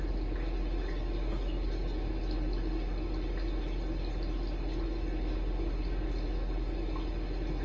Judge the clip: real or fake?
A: real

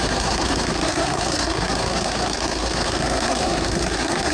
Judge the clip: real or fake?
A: fake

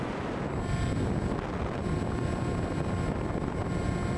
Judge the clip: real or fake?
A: real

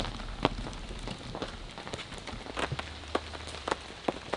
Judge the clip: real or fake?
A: real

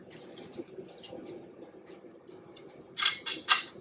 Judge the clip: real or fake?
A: real